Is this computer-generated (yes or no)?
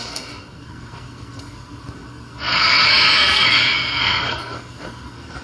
yes